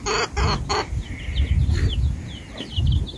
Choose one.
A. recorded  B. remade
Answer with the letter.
A